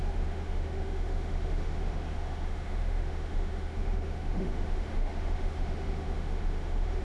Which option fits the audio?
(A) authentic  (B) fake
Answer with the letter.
B